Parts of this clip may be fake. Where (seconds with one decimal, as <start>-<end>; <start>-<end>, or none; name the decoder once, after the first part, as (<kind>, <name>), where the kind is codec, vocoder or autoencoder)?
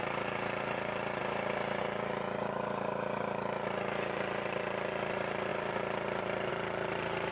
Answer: 0.0-1.2 (vocoder, BigVGAN v2); 1.8-7.3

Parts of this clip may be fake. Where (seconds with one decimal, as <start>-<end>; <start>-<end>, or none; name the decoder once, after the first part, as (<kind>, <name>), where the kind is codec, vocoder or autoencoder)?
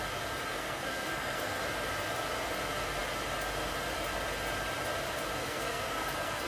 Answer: 0.5-1.6 (codec, SNAC); 5.4-6.5